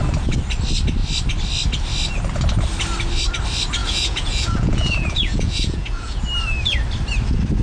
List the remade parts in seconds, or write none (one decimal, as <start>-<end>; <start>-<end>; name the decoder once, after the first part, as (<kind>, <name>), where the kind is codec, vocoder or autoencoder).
3.8-6.2 (vocoder, Vocos)